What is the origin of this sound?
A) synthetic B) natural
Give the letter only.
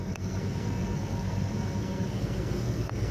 A